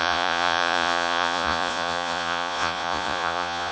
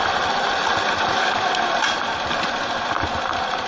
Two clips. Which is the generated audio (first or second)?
first